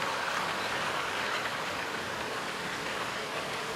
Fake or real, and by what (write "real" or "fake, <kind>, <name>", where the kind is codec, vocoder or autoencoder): fake, codec, DAC